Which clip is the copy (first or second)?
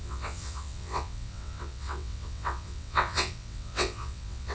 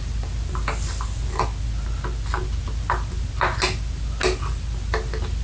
first